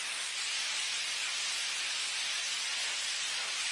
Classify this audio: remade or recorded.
recorded